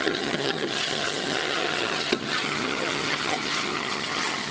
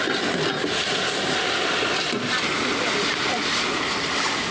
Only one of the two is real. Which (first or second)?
second